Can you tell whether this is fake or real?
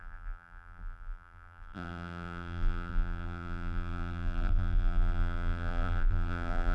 fake